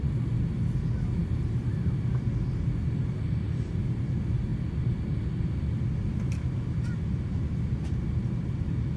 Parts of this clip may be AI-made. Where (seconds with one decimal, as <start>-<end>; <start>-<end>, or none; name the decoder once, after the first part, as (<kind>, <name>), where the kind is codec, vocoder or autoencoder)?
none